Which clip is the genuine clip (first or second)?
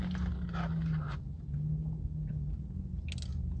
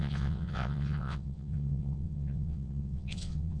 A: first